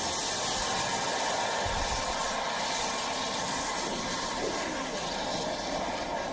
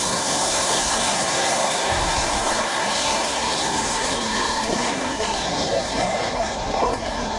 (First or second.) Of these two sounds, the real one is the first